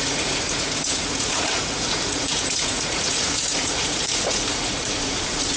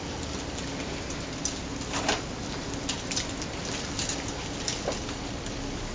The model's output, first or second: first